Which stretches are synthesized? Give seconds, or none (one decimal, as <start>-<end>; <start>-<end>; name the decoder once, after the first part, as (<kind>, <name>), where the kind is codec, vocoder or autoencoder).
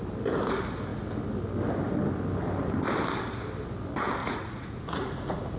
4.2-5.6 (vocoder, Vocos)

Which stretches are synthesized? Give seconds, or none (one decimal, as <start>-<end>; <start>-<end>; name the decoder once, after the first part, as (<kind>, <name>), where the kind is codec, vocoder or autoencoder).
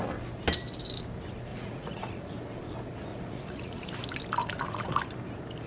1.5-2.2 (vocoder, Vocos); 3.1-3.9; 4.4-5.0